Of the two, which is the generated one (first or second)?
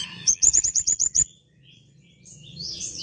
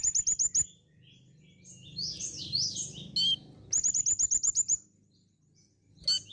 first